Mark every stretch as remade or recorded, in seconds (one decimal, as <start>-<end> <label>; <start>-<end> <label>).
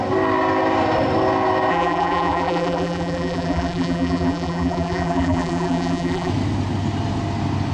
0.0-1.7 recorded; 1.7-6.3 remade; 6.3-7.7 recorded